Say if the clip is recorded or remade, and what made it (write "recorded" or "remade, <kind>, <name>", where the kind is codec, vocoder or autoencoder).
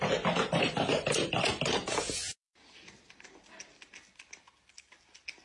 recorded